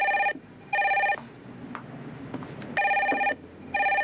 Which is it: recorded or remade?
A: recorded